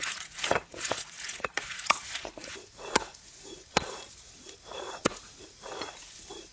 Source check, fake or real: fake